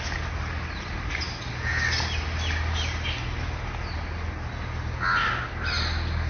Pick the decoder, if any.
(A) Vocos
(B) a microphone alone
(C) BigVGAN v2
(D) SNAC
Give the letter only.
B